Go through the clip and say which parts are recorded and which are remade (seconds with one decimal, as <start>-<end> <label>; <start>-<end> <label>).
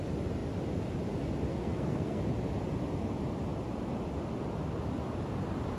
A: 0.0-1.5 recorded; 1.5-2.2 remade; 2.2-5.8 recorded